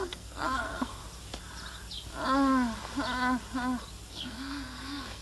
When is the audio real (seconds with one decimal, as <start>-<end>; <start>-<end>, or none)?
1.0-4.1